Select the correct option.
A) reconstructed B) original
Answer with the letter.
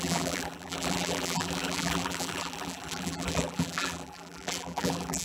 A